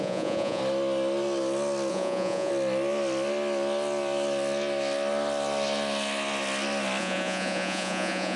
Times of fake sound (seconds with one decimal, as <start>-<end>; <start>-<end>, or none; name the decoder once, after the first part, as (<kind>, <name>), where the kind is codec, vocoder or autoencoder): 0.0-0.6 (vocoder, Vocos); 1.9-2.5; 7.0-8.4